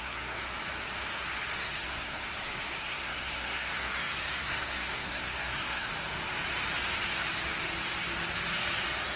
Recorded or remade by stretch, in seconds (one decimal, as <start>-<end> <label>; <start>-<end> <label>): 0.0-0.5 remade; 0.5-1.5 recorded; 1.5-2.2 remade; 2.2-2.8 recorded; 2.8-5.9 remade; 5.9-9.2 recorded